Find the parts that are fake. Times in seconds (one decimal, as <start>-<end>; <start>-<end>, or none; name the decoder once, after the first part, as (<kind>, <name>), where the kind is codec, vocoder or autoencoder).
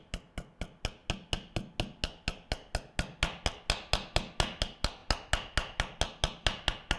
none